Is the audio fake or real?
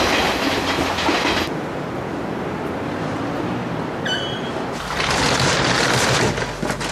real